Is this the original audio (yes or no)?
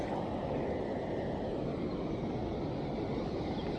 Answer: yes